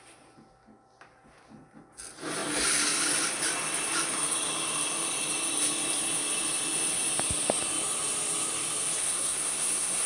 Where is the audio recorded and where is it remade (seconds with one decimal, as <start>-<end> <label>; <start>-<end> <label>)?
0.0-9.0 recorded; 9.0-10.1 remade